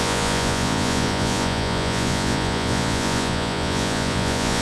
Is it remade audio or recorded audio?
remade